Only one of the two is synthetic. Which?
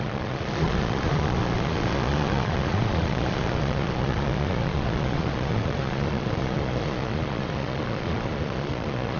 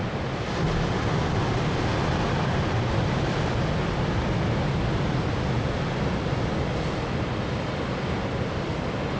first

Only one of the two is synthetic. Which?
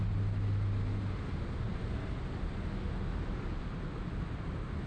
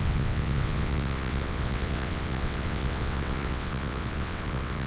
second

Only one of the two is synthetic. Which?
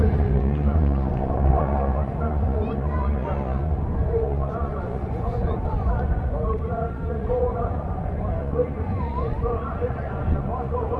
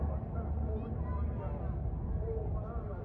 first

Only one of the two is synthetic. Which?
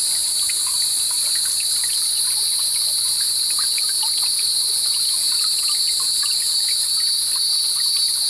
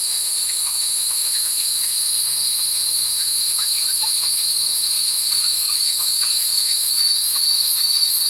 second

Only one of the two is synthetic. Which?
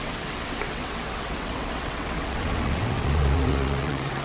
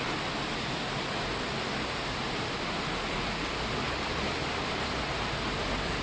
first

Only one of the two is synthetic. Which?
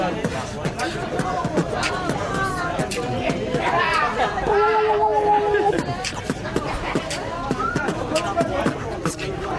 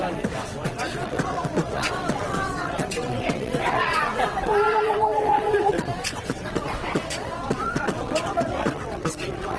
second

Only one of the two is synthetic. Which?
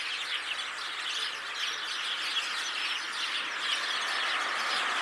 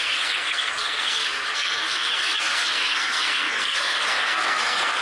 second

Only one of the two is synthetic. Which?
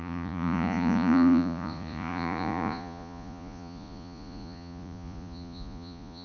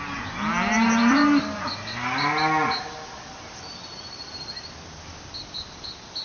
first